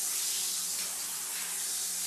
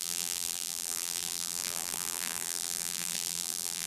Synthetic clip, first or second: second